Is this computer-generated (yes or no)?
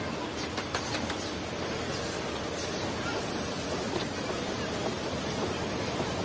no